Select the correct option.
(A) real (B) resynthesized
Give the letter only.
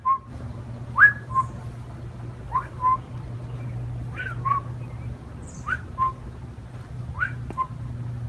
A